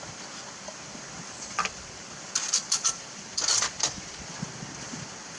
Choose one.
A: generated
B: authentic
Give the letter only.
A